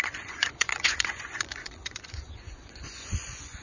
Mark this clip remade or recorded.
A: remade